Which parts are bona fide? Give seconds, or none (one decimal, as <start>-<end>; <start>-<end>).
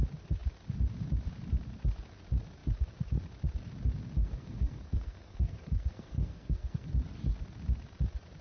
0.0-4.2; 6.9-8.4